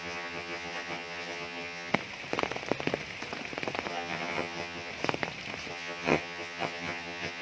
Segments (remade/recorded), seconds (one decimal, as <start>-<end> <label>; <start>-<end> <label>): 0.0-1.9 remade; 1.9-3.9 recorded; 3.9-4.9 remade; 4.9-5.7 recorded; 5.7-7.4 remade